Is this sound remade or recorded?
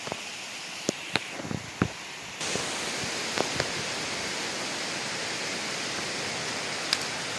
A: remade